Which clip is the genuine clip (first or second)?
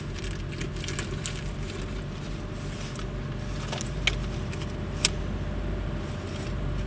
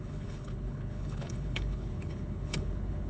first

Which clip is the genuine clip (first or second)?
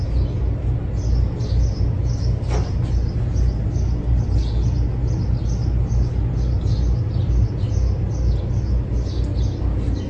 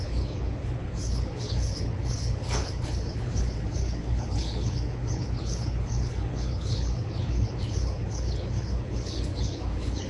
first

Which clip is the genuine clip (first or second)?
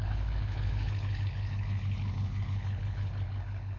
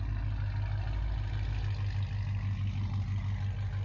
second